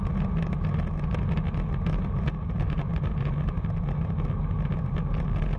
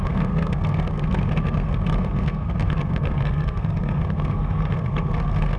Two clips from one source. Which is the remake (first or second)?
second